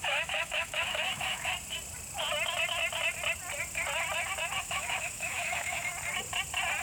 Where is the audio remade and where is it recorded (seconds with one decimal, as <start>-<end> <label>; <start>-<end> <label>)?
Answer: 0.0-1.5 remade; 1.5-4.6 recorded; 4.6-5.9 remade; 5.9-6.8 recorded

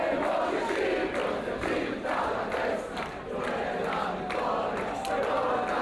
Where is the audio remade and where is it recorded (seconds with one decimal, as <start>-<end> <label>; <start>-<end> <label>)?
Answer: 0.0-5.8 recorded

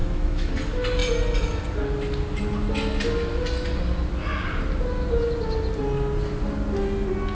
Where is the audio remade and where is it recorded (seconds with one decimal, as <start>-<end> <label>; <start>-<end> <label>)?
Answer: 0.0-0.5 remade; 0.5-7.3 recorded

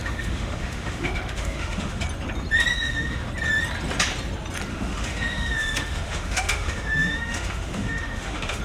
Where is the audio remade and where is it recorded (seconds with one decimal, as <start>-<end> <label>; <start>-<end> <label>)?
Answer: 0.0-2.0 remade; 2.0-2.7 recorded; 2.7-3.3 remade; 3.3-4.7 recorded; 4.7-8.6 remade

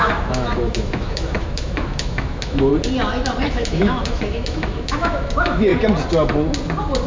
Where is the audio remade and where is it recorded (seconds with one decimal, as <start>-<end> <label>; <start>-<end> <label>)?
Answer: 0.0-2.7 remade; 2.7-3.5 recorded; 3.5-5.7 remade; 5.7-7.1 recorded

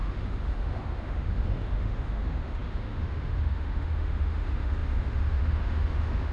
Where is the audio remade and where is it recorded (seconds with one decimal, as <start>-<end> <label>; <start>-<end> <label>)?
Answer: 0.0-6.3 remade

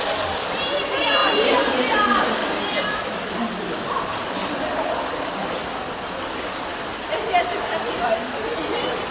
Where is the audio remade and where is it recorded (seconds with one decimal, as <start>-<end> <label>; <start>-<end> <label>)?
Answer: 0.0-9.1 recorded

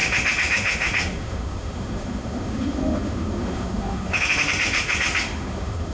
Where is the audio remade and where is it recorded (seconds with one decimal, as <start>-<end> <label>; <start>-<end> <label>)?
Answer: 0.0-5.9 remade